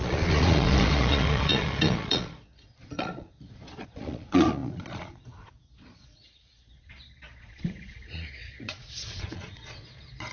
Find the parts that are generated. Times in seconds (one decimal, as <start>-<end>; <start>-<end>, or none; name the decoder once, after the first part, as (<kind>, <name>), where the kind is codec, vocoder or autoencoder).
0.0-10.3 (vocoder, Vocos)